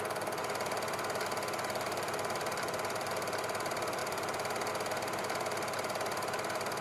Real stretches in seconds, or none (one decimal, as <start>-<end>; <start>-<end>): 0.0-0.4; 3.1-4.0; 4.7-6.8